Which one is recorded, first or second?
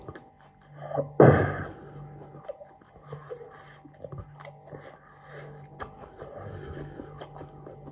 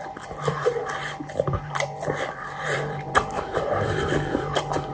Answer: first